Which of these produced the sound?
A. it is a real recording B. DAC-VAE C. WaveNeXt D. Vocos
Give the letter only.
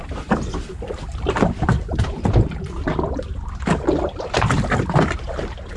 A